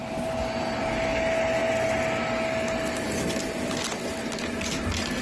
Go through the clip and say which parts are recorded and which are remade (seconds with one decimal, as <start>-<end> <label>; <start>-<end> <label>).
0.0-5.2 recorded